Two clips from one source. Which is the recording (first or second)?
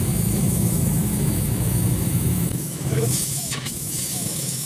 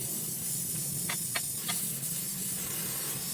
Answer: second